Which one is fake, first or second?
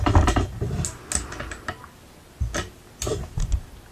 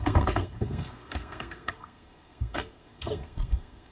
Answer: second